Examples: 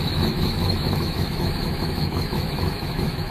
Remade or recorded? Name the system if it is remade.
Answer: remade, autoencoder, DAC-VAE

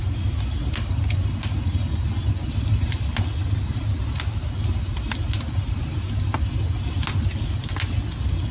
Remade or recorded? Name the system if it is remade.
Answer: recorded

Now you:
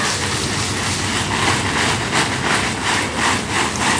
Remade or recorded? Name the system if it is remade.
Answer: recorded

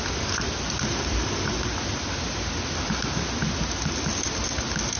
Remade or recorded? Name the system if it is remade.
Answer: recorded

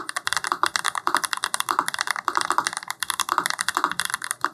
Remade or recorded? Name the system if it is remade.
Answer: recorded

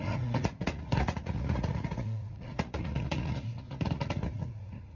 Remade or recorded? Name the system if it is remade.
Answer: remade, vocoder, Vocos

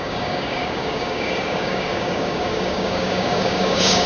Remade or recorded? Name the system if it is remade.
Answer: remade, codec, DAC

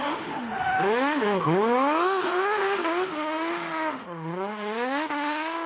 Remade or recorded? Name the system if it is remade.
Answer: remade, autoencoder, DAC-VAE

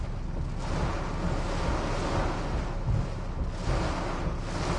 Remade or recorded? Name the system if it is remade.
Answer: recorded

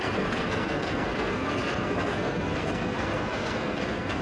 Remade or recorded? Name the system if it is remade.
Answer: remade, codec, SNAC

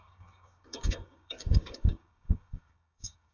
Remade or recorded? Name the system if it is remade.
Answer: remade, codec, DAC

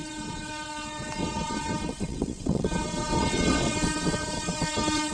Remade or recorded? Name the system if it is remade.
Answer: remade, vocoder, WaveNeXt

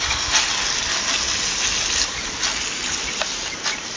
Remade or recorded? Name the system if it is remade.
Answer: recorded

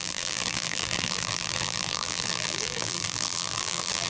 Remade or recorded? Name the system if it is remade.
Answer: remade, vocoder, BigVGAN v2